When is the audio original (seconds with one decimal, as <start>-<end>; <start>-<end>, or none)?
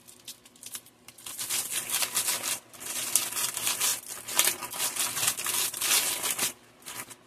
0.0-7.3